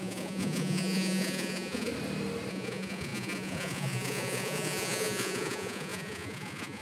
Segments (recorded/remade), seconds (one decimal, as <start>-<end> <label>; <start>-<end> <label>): 0.0-1.9 remade; 1.9-2.5 recorded; 2.5-6.8 remade